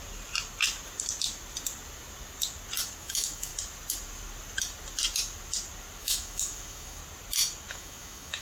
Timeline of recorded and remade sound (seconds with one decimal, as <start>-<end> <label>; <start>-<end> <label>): 0.0-3.0 recorded; 3.0-3.5 remade; 3.5-6.0 recorded; 6.0-7.0 remade; 7.0-7.7 recorded; 7.7-8.4 remade